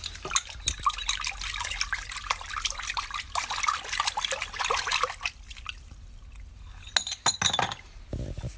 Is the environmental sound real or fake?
real